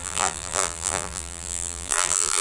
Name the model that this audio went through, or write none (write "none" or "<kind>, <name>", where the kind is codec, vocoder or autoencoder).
vocoder, BigVGAN v2